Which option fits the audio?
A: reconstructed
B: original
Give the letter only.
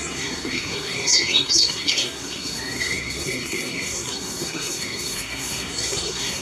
A